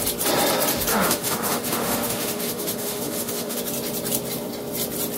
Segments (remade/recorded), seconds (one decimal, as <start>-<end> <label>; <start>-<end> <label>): 0.0-0.9 recorded; 0.9-3.6 remade; 3.6-5.2 recorded